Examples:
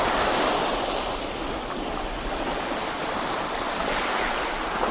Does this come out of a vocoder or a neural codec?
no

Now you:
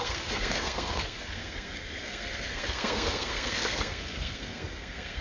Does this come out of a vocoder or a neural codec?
yes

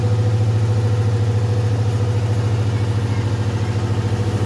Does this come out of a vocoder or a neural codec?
no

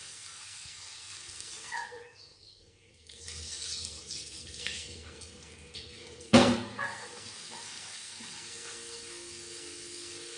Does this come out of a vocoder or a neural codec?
yes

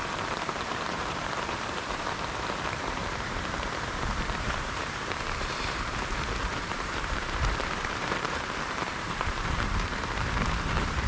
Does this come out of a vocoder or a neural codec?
yes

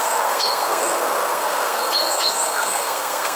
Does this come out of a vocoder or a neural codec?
yes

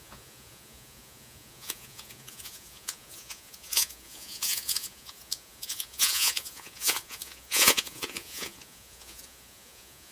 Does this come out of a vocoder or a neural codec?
yes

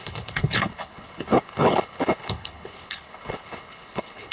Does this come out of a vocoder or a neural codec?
yes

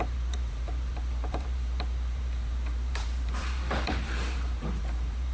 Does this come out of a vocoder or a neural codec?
yes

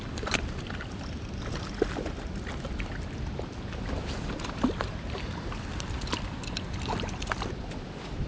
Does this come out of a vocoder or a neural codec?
yes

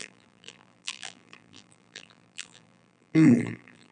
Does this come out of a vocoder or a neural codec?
yes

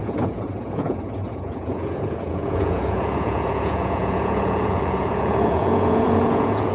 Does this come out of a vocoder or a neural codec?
yes